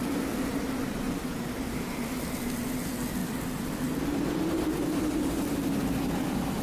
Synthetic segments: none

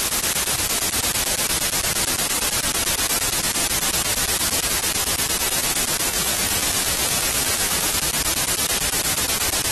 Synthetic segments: 6.1-8.0 (vocoder, Vocos)

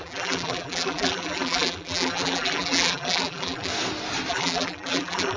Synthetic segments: 0.0-3.7 (vocoder, BigVGAN v2); 4.3-5.4

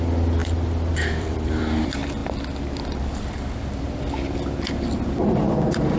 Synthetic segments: 0.4-1.8 (vocoder, BigVGAN v2)

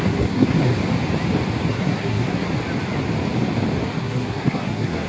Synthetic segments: 0.0-0.7 (codec, SNAC); 1.7-2.5; 4.0-5.1

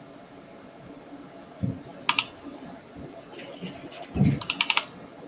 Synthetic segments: none